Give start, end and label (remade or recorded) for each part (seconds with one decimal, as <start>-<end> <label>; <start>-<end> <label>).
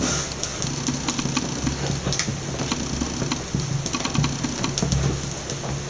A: 0.0-5.9 recorded